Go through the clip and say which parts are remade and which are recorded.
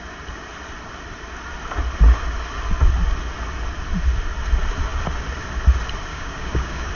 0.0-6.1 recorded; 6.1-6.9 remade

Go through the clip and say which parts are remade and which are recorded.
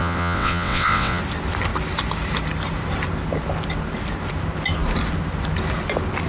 0.0-1.2 remade; 1.2-6.3 recorded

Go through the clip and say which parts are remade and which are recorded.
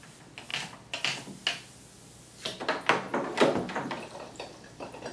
0.0-5.1 recorded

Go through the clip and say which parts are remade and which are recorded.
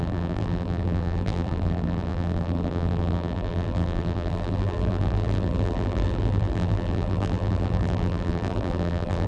0.0-9.3 remade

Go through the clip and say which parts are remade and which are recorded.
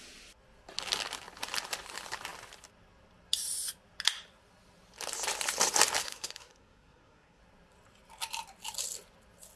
0.0-6.0 recorded; 6.0-7.4 remade; 7.4-9.6 recorded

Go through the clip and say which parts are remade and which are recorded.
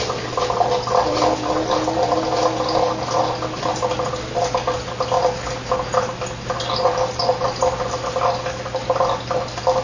0.0-9.8 recorded